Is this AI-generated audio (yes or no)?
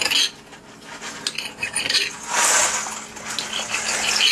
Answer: no